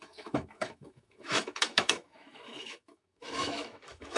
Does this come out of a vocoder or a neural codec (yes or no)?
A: yes